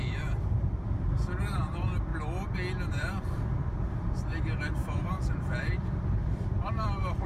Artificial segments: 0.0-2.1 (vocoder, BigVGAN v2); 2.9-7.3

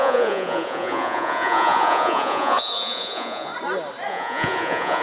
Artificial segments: 0.0-3.5 (vocoder, Vocos); 4.1-5.0

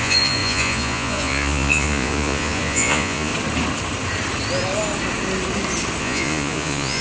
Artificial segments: 0.0-3.3 (vocoder, Vocos); 6.0-7.0